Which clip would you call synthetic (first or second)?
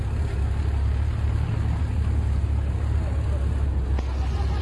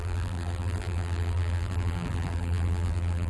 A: second